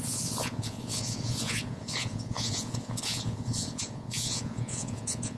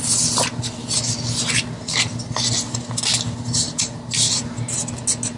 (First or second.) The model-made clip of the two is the first